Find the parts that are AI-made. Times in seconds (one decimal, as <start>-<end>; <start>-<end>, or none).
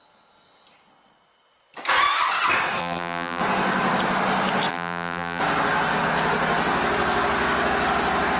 2.8-3.4; 4.7-5.4